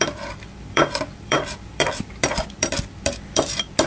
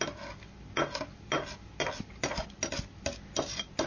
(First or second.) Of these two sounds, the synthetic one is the first